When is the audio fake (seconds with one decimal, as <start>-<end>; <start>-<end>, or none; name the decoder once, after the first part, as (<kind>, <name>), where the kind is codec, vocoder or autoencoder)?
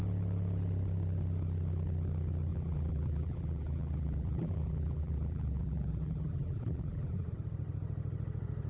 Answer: 2.5-7.3 (vocoder, BigVGAN v2)